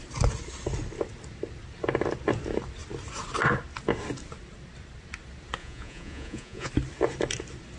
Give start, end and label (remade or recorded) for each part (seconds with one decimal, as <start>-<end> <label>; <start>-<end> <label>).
0.0-5.6 recorded; 5.6-6.7 remade; 6.7-7.8 recorded